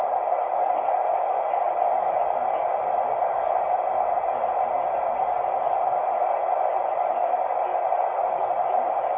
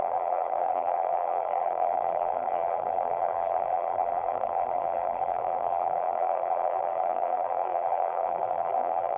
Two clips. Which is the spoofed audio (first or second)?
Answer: second